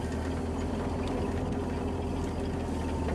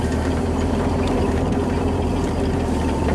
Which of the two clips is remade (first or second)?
second